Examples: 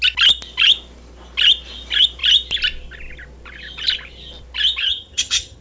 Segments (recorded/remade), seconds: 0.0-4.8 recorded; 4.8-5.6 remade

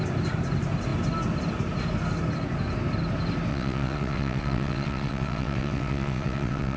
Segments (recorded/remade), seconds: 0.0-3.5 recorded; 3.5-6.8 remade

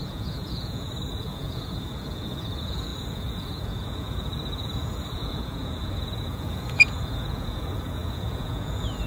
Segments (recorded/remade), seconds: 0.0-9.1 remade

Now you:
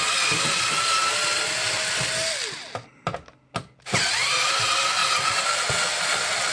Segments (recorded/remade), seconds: 0.0-6.5 recorded

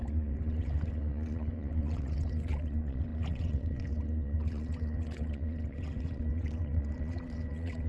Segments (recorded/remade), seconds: 0.0-7.9 remade

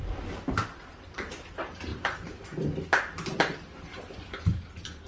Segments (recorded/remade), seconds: 0.0-5.1 recorded